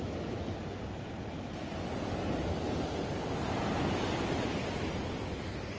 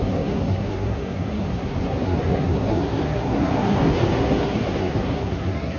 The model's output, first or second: second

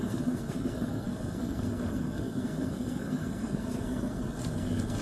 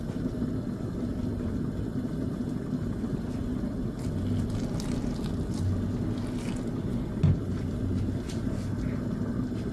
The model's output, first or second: first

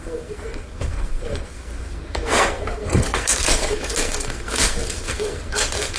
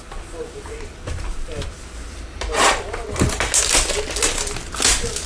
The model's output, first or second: first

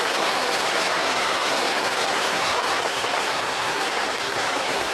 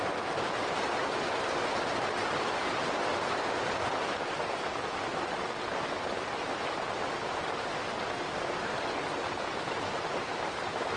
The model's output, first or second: first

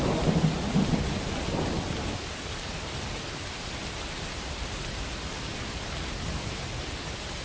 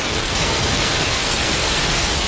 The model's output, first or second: second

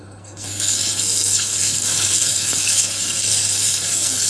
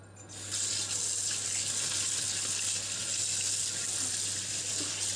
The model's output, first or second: first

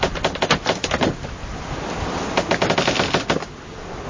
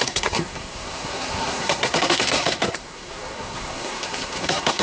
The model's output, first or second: second